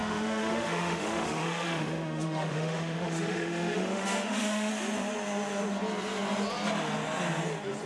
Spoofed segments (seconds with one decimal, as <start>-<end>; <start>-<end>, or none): 0.0-4.7